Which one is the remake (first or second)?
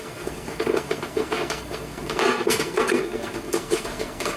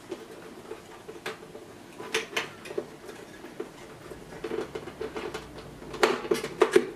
first